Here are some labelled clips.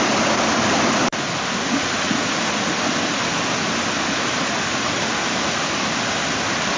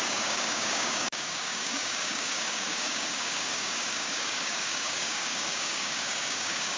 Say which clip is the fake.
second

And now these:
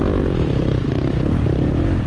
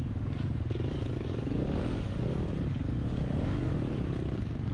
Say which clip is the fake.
second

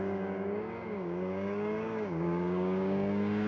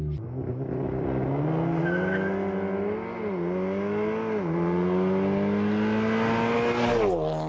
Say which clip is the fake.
first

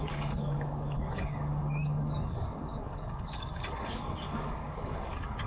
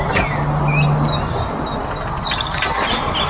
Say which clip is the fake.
first